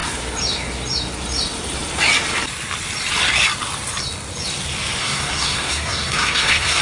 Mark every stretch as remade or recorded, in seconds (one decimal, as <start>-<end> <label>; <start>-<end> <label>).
0.0-5.0 recorded; 5.0-6.8 remade